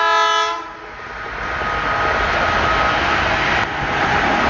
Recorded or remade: recorded